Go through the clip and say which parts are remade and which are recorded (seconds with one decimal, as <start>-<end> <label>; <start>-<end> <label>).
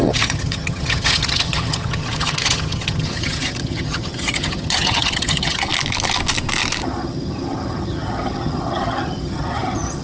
0.0-5.7 remade; 5.7-6.8 recorded; 6.8-10.0 remade